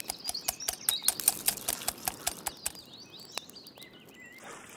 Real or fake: real